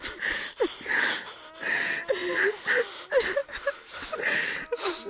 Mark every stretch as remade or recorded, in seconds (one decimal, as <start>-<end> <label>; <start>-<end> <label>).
0.0-5.1 recorded

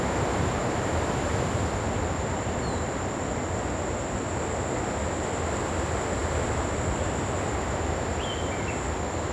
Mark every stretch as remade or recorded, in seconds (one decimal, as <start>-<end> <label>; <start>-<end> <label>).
0.0-9.3 recorded

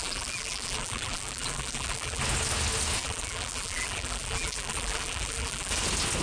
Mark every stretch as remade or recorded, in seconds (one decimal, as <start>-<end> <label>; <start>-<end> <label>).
0.0-2.2 remade; 2.2-3.0 recorded; 3.0-5.7 remade; 5.7-6.2 recorded

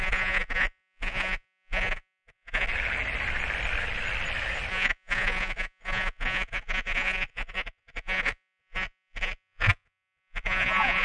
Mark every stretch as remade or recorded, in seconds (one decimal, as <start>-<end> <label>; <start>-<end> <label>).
0.0-2.7 remade; 2.7-4.7 recorded; 4.7-11.0 remade

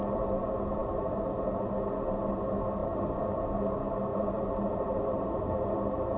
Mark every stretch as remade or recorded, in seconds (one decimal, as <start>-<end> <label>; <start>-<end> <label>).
0.0-2.8 recorded; 2.8-3.4 remade; 3.4-4.1 recorded; 4.1-5.6 remade; 5.6-6.2 recorded